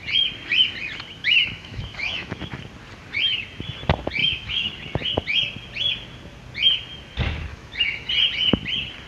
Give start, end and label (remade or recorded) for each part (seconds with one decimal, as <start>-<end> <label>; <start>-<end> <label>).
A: 0.0-1.2 recorded; 1.2-2.4 remade; 2.4-4.2 recorded; 4.2-4.7 remade; 4.7-7.5 recorded; 7.5-8.1 remade; 8.1-9.1 recorded